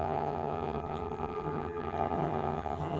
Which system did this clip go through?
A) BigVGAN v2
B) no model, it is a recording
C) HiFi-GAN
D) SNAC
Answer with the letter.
C